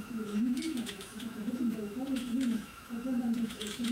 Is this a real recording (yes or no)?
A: no